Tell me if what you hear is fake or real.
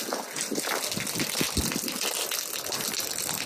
real